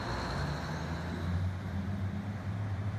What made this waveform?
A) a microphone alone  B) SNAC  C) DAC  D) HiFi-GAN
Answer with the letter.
A